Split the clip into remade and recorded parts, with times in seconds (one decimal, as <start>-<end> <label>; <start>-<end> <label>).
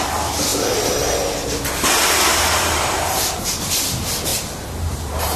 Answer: 0.0-2.3 recorded; 2.3-3.6 remade; 3.6-4.3 recorded; 4.3-5.4 remade